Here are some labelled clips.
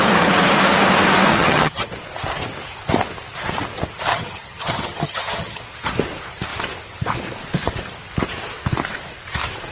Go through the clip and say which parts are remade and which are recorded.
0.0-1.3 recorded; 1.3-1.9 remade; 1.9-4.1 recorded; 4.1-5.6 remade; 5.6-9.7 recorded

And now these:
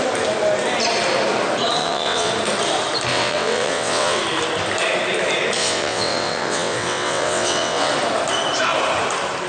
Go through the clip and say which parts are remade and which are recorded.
0.0-1.8 recorded; 1.8-2.3 remade; 2.3-3.1 recorded; 3.1-4.2 remade; 4.2-5.6 recorded; 5.6-7.9 remade; 7.9-9.5 recorded

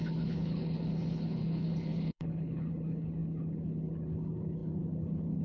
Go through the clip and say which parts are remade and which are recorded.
0.0-5.4 remade

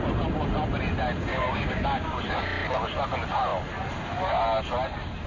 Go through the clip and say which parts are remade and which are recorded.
0.0-1.3 recorded; 1.3-2.2 remade; 2.2-5.3 recorded